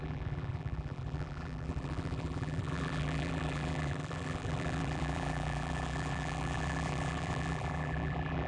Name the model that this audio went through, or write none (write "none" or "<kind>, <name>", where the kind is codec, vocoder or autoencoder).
vocoder, BigVGAN v2